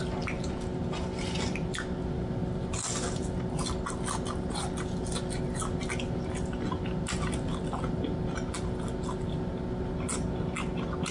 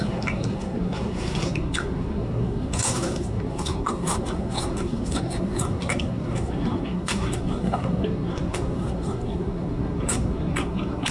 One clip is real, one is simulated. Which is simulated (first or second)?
second